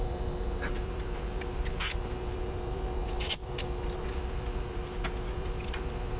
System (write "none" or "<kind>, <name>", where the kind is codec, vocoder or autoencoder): none